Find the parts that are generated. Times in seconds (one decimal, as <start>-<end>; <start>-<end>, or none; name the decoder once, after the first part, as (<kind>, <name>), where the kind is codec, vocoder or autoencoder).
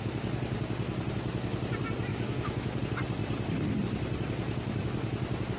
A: 2.1-2.8 (autoencoder, DAC-VAE)